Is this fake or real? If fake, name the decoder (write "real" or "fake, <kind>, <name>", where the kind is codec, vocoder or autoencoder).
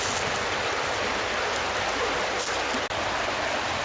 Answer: real